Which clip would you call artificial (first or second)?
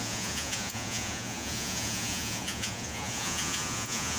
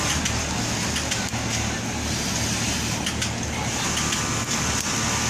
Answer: first